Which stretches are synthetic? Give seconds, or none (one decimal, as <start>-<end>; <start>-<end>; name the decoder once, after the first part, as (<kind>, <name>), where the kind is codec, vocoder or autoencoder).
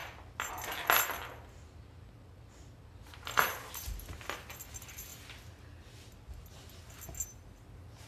none